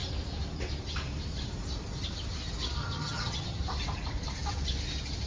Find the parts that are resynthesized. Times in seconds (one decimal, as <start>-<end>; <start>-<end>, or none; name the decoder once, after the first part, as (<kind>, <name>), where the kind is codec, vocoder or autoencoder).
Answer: 2.8-3.6 (vocoder, HiFi-GAN)